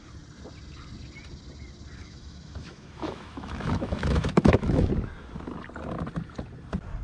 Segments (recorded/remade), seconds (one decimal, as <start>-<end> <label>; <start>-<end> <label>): 0.0-2.0 recorded; 2.0-4.9 remade; 4.9-7.0 recorded